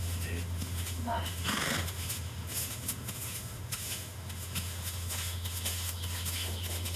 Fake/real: fake